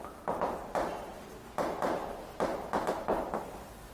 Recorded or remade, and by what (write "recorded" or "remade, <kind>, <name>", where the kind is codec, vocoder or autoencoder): recorded